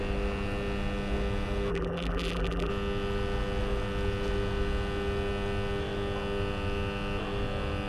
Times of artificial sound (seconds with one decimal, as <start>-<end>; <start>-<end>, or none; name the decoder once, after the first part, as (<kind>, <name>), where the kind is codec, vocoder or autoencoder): 1.7-2.7 (vocoder, BigVGAN v2)

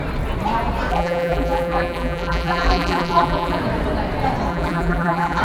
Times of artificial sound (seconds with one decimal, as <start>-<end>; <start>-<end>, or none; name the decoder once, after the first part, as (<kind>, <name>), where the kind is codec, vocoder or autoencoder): 0.9-3.6 (vocoder, BigVGAN v2); 4.5-5.4

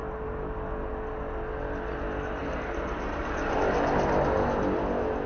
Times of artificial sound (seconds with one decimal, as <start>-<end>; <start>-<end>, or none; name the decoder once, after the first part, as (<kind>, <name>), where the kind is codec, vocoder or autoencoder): 2.4-3.5 (vocoder, BigVGAN v2)